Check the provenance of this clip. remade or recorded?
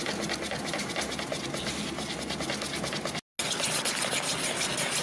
recorded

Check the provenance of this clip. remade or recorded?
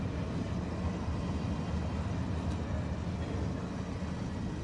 recorded